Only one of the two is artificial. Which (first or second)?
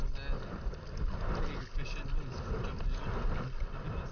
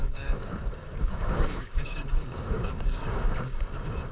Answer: second